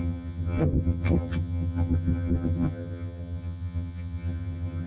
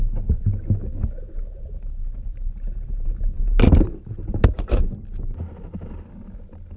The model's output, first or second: first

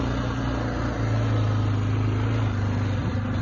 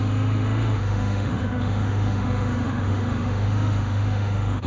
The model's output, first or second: second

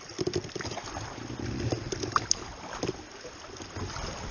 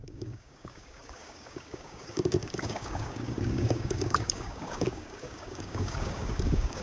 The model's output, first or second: second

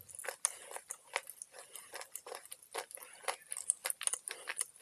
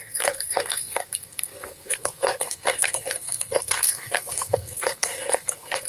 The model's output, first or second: second